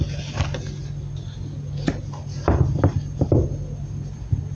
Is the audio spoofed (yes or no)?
no